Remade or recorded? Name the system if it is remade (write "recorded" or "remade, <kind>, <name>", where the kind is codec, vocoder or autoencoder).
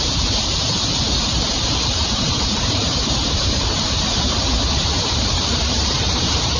remade, vocoder, BigVGAN v2